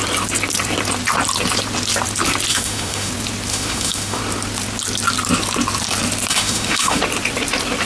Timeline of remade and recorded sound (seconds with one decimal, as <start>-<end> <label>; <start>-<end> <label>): 0.0-2.5 recorded; 2.5-3.1 remade; 3.1-3.5 recorded; 3.5-4.2 remade; 4.2-6.3 recorded; 6.3-7.0 remade; 7.0-7.9 recorded